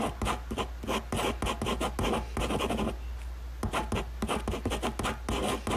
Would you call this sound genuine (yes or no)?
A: yes